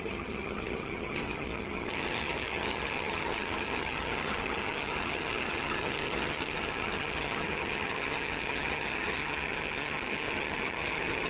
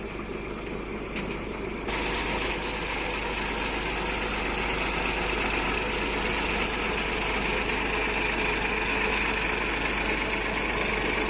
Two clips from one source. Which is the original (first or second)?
second